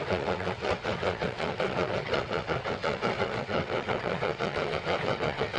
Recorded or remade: remade